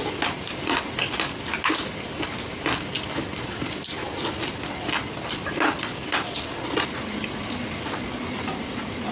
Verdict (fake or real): real